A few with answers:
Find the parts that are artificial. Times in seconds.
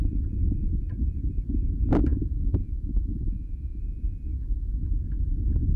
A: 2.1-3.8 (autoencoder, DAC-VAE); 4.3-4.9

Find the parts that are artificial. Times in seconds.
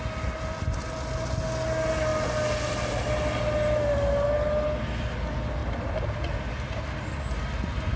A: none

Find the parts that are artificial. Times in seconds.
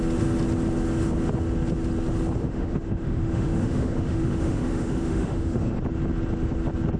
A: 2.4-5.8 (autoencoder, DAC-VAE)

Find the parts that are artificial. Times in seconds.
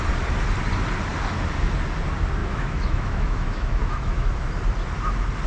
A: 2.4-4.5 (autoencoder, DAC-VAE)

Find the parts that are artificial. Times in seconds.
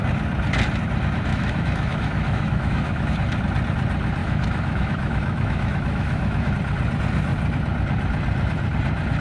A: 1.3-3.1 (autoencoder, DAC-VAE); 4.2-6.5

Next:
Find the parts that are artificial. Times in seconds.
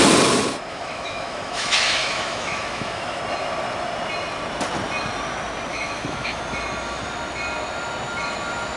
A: 0.7-3.2 (autoencoder, DAC-VAE); 5.7-6.4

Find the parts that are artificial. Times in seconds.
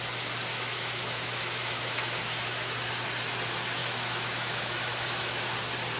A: 0.5-2.9 (autoencoder, DAC-VAE); 3.8-5.4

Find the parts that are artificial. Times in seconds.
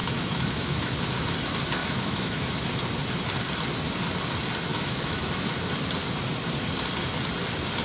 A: 0.0-0.9 (autoencoder, DAC-VAE); 1.8-2.7; 4.7-5.5